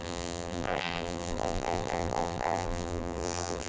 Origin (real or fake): fake